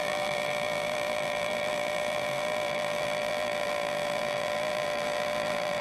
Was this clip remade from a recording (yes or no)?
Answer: yes